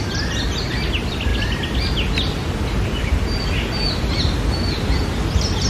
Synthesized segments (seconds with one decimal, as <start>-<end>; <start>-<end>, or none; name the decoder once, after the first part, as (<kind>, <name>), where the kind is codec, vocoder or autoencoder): none